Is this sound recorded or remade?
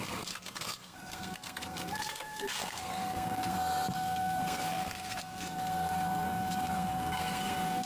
remade